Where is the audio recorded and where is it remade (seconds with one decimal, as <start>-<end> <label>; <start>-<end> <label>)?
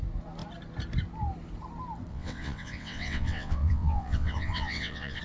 0.0-2.1 recorded; 2.1-5.2 remade